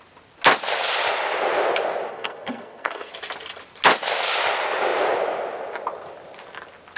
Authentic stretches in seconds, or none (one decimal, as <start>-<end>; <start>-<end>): 0.0-2.1; 3.1-7.0